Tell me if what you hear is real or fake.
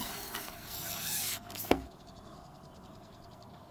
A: fake